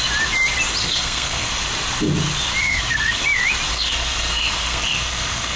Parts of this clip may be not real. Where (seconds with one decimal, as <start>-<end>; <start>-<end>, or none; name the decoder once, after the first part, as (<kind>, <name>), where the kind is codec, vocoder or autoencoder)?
0.8-1.5 (codec, SNAC); 2.6-3.2; 3.7-5.6